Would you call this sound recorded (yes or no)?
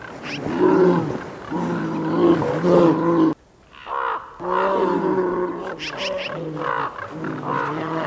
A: yes